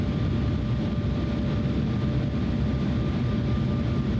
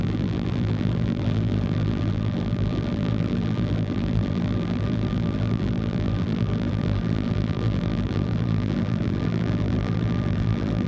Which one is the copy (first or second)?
second